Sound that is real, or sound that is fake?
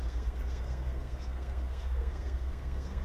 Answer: fake